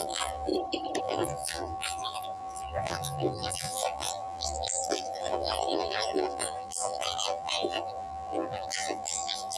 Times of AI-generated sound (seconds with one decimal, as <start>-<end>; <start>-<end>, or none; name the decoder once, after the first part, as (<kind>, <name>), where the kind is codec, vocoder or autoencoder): 0.0-0.5 (vocoder, BigVGAN v2); 1.0-9.6

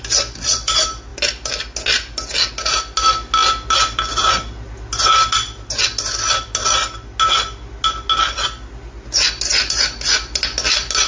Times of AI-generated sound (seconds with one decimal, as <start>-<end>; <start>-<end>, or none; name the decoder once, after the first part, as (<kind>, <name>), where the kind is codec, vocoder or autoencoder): none